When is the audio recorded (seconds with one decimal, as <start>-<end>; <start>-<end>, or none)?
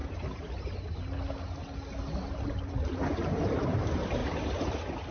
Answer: 0.0-2.4; 4.2-5.1